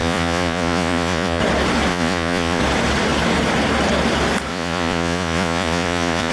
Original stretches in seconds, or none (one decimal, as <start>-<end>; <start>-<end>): 1.4-1.9; 2.6-4.5